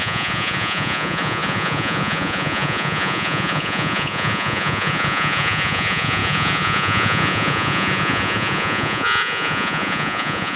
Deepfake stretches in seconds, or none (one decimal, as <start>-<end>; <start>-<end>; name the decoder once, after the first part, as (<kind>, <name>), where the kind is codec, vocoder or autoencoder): 0.0-10.6 (vocoder, Vocos)

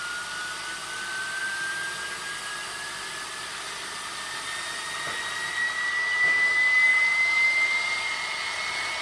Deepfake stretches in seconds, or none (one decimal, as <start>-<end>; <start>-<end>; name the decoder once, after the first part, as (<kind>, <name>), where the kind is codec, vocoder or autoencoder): none

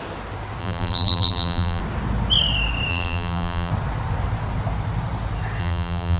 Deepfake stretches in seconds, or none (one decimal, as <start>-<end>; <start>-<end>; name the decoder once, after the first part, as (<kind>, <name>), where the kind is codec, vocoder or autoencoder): 0.6-1.8 (vocoder, BigVGAN v2); 2.9-3.7; 5.6-6.2

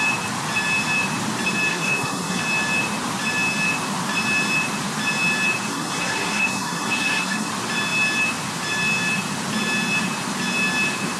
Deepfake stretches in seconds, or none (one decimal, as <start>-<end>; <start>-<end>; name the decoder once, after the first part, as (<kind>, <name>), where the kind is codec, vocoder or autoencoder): 1.7-2.4 (codec, SNAC); 5.7-7.5

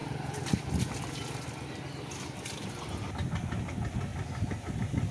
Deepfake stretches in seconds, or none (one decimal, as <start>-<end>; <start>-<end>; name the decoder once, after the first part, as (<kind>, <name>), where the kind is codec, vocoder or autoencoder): 0.0-1.8 (vocoder, BigVGAN v2)

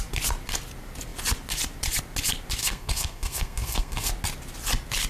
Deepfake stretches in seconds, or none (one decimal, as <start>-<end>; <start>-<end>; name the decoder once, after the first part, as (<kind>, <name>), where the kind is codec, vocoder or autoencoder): 2.6-4.1 (codec, SNAC)

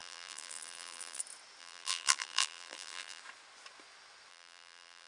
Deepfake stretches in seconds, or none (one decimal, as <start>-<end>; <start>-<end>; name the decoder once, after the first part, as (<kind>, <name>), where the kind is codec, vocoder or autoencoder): 0.0-1.2 (vocoder, BigVGAN v2); 1.6-3.2; 4.3-5.1